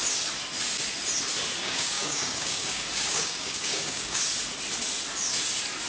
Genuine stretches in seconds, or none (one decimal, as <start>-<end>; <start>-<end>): 0.0-1.6; 4.2-5.9